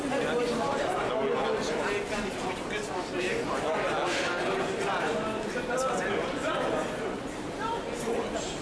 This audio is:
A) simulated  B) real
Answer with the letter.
B